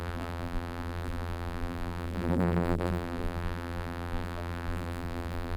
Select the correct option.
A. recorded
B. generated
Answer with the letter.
B